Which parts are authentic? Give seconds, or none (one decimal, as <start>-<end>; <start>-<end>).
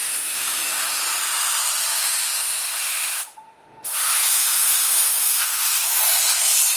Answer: 1.0-1.9; 6.0-6.8